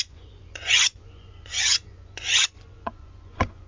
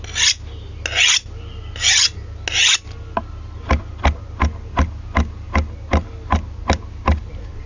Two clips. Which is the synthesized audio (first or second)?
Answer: first